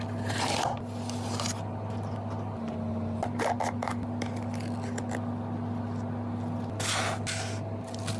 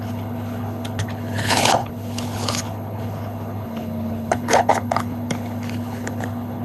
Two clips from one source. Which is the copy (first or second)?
second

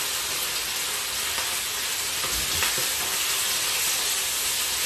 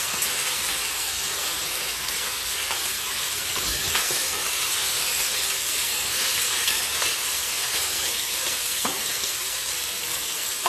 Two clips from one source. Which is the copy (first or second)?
second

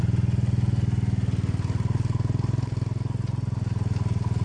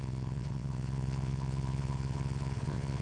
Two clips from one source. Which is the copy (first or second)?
second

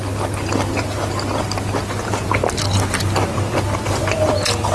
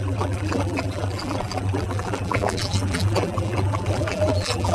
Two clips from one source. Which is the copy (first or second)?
second